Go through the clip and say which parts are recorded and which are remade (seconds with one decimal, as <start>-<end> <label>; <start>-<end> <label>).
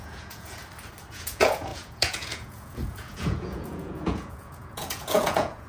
0.0-0.6 remade; 0.6-1.1 recorded; 1.1-5.7 remade